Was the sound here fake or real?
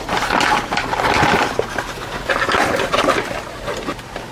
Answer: real